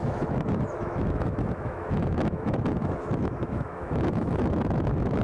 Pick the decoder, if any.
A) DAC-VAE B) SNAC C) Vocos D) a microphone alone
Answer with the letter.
A